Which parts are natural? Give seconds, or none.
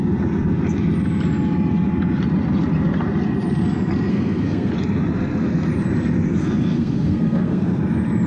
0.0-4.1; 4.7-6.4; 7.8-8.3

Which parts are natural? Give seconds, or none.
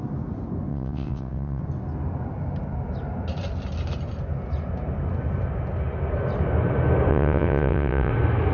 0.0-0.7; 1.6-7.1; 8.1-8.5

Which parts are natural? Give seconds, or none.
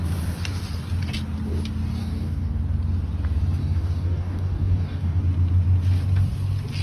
0.0-2.0; 2.6-3.6; 5.2-6.8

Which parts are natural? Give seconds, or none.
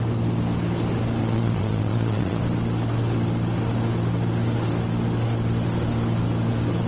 0.0-1.2; 2.4-6.9